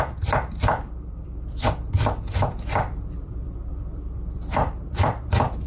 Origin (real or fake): fake